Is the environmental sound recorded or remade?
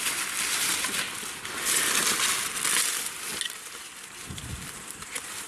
recorded